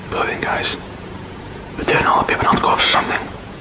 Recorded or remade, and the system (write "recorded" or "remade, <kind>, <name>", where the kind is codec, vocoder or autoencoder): remade, vocoder, Vocos